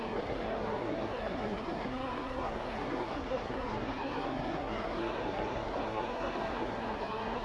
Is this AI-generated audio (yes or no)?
yes